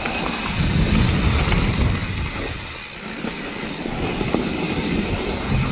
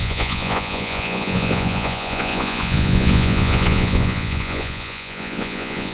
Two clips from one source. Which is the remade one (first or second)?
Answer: second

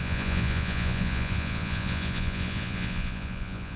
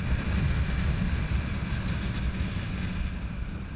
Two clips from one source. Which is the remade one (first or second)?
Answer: first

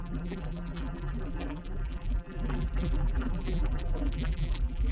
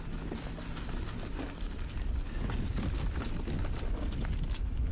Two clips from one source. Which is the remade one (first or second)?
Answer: first